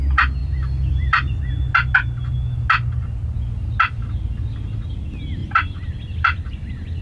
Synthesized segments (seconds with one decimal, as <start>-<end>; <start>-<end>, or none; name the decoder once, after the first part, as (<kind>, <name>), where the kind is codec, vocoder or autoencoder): 0.4-1.5 (vocoder, BigVGAN v2); 5.4-7.0